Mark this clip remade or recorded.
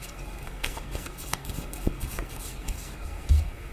remade